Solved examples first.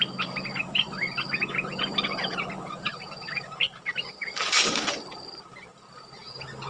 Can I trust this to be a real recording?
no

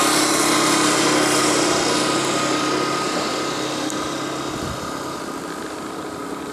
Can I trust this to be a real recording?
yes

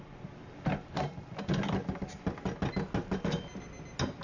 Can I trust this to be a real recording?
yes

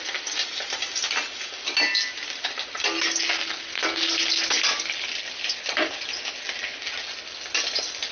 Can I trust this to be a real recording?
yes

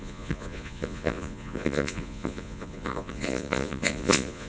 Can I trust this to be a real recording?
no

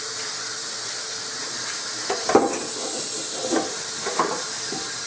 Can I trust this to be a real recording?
yes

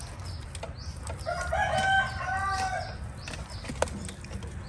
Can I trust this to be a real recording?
yes